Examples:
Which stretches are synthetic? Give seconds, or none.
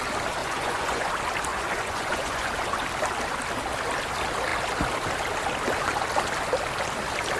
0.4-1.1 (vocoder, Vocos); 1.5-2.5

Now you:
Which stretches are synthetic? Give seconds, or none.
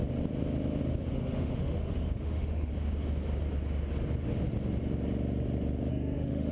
1.1-2.7 (autoencoder, DAC-VAE); 5.9-6.5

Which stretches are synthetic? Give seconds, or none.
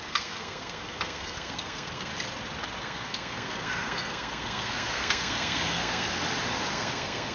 0.0-2.1 (codec, SNAC); 2.8-6.2; 6.7-7.3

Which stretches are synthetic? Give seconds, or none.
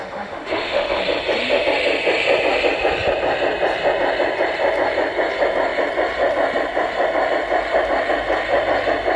0.0-1.0 (autoencoder, DAC-VAE)